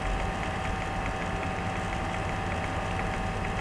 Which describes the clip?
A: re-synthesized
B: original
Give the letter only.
B